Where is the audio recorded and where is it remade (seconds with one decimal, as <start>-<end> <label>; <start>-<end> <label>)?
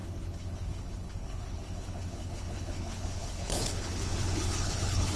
0.0-5.2 remade